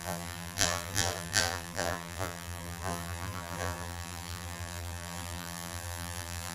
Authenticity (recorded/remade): remade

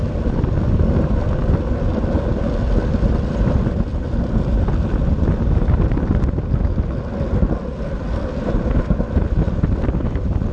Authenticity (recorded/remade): recorded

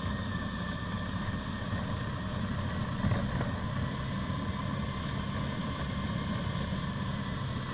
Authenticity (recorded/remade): recorded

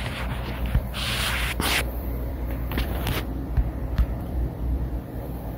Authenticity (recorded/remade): remade